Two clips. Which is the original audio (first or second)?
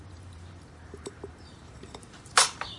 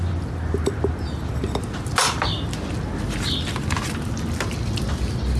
second